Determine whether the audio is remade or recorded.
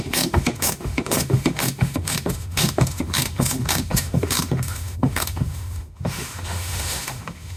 remade